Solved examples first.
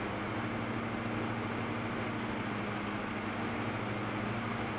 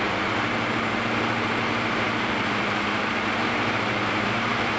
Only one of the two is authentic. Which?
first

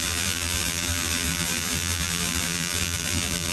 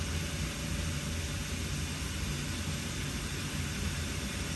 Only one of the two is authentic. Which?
second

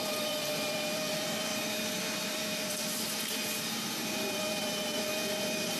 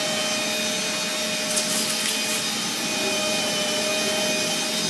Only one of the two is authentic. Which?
second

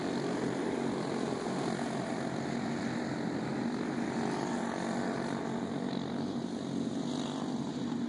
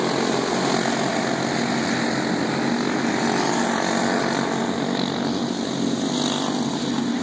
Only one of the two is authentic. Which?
second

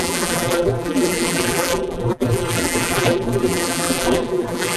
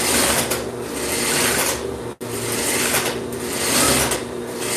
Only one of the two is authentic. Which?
second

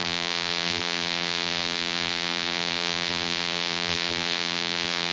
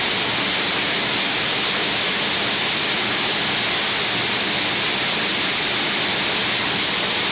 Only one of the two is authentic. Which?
second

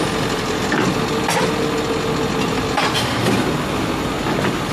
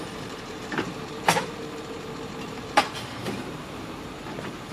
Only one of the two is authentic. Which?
first